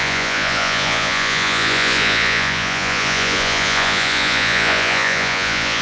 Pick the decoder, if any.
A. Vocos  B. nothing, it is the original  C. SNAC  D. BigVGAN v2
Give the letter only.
A